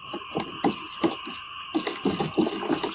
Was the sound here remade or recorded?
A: recorded